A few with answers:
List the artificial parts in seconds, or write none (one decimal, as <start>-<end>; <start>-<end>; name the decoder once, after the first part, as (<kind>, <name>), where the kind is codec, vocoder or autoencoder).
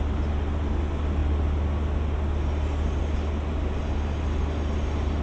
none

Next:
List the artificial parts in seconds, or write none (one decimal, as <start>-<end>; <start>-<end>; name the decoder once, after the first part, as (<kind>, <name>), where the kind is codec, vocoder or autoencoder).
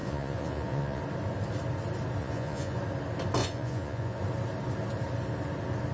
0.0-1.0 (vocoder, Vocos); 2.2-2.8; 3.4-4.2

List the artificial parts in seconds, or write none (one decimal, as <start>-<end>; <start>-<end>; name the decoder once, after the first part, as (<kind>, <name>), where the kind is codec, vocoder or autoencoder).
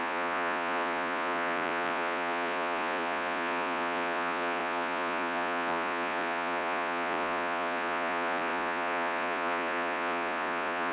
0.0-10.9 (vocoder, Vocos)